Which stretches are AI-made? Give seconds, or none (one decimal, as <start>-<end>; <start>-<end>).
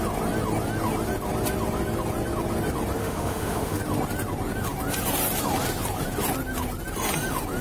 3.0-3.8